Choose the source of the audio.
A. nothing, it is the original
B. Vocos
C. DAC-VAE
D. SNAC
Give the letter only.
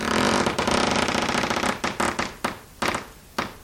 A